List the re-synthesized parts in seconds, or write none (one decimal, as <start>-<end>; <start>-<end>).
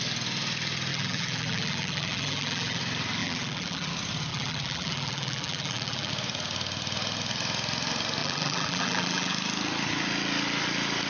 0.9-2.8; 3.2-3.9; 4.3-6.1; 8.2-9.3